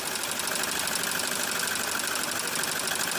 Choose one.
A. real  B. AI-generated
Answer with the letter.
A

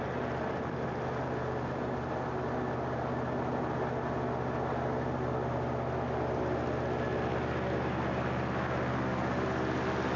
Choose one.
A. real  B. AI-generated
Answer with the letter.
A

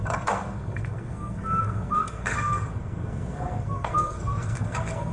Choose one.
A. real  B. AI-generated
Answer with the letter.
B